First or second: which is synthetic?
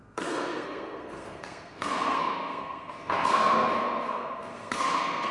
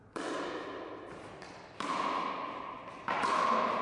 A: first